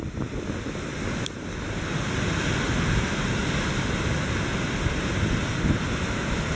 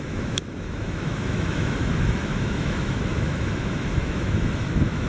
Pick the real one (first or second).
first